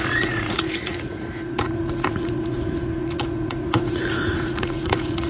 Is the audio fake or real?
fake